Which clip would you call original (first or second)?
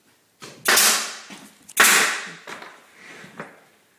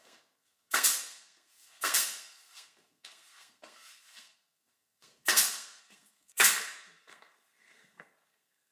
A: first